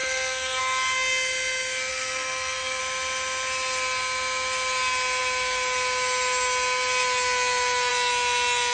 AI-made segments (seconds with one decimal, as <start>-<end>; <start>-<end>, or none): 0.0-0.6; 1.9-2.8